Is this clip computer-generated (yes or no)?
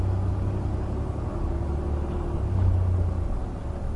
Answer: no